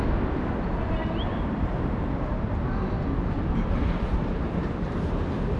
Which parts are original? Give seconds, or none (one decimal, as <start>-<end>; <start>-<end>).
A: 0.0-1.0; 2.0-4.1; 5.1-5.6